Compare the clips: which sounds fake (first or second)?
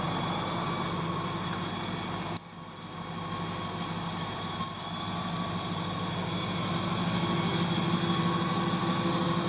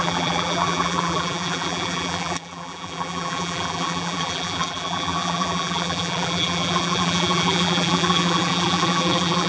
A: second